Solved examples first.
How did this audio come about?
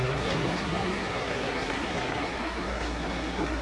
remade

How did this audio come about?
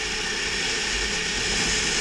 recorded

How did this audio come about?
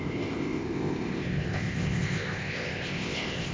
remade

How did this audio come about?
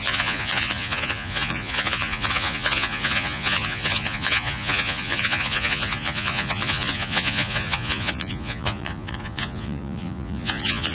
remade